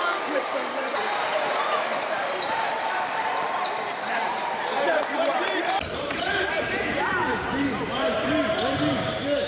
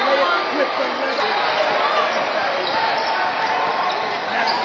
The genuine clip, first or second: second